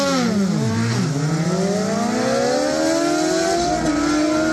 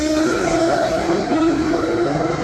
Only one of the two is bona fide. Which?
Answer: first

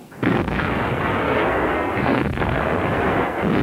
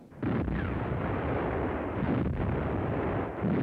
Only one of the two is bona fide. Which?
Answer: second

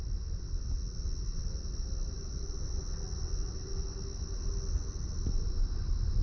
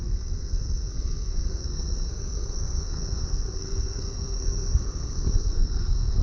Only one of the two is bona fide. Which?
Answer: first